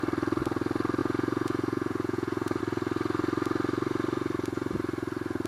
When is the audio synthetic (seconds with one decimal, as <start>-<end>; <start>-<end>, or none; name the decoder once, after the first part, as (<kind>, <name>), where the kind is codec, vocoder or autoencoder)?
1.0-2.6 (vocoder, Vocos)